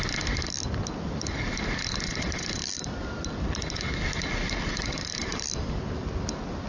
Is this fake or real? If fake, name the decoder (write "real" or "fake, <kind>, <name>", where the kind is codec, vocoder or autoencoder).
real